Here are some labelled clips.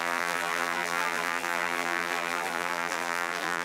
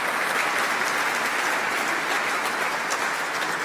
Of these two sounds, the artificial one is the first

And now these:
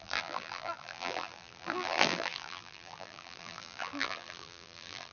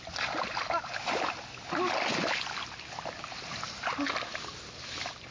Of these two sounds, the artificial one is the first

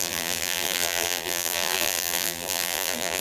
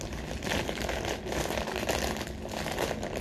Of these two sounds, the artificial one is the first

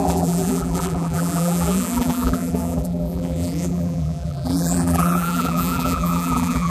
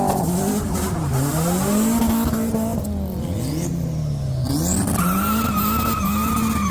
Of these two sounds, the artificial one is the first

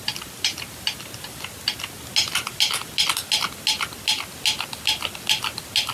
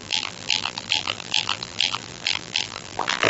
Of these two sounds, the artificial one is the second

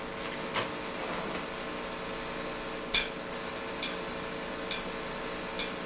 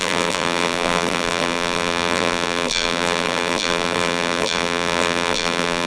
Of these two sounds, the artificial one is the second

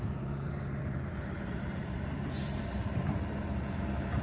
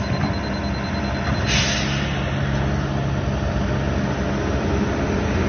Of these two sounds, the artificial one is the first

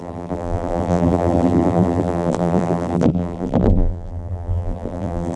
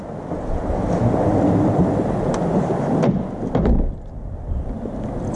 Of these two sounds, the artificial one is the first